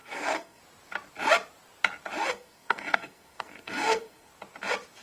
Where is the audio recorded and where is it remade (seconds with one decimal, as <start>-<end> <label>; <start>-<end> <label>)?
0.0-0.6 remade; 0.6-2.3 recorded; 2.3-4.3 remade; 4.3-5.0 recorded